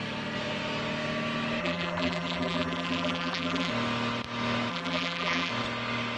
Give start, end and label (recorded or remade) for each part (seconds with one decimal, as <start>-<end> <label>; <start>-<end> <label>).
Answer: 0.0-1.6 recorded; 1.6-3.7 remade; 3.7-4.7 recorded; 4.7-5.5 remade; 5.5-6.2 recorded